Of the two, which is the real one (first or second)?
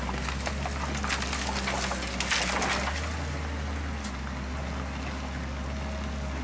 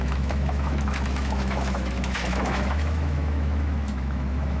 first